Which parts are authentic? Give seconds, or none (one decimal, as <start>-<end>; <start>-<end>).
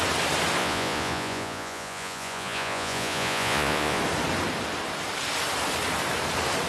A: 0.0-0.6; 4.0-6.7